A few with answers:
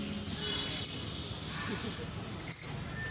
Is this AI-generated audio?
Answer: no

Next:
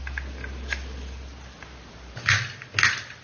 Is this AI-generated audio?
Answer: no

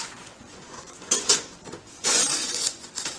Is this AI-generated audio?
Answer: yes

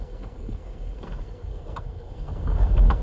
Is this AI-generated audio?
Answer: yes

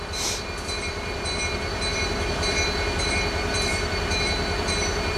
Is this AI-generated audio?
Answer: yes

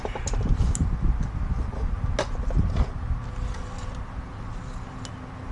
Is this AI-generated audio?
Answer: no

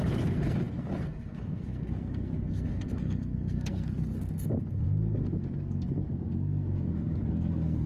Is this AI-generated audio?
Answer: yes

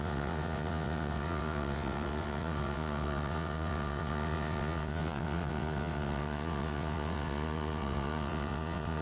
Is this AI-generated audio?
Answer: yes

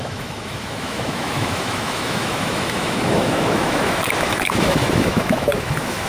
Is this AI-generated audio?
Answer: yes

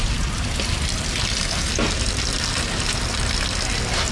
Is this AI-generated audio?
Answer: no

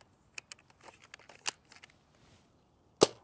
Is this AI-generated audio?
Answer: no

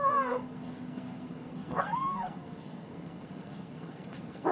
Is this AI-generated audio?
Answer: yes